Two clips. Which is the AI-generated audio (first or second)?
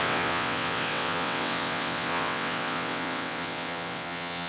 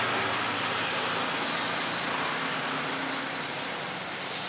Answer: first